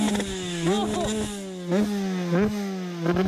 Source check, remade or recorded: recorded